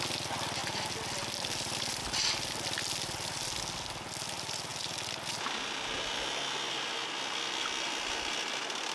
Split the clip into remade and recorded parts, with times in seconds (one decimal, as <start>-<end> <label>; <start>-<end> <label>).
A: 0.0-8.9 recorded